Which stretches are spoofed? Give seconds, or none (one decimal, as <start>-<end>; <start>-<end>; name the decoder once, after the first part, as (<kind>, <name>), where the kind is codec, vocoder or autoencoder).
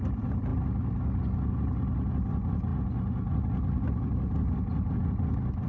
none